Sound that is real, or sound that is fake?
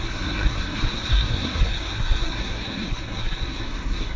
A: fake